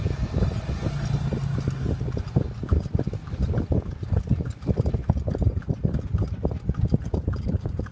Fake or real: real